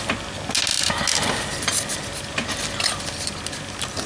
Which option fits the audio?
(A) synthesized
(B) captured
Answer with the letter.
B